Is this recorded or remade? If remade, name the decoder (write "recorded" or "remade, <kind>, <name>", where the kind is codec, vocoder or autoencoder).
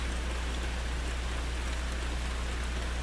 recorded